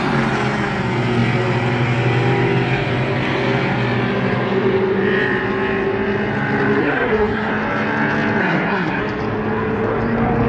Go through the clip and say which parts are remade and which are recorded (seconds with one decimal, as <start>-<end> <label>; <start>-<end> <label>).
0.0-6.8 recorded; 6.8-7.5 remade; 7.5-8.4 recorded; 8.4-9.0 remade; 9.0-10.5 recorded